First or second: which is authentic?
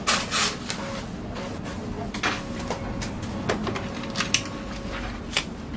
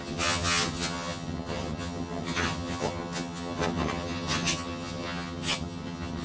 first